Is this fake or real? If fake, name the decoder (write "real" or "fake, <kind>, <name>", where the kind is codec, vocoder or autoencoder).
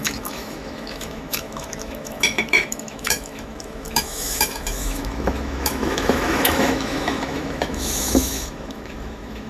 fake, autoencoder, DAC-VAE